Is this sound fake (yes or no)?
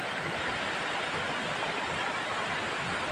no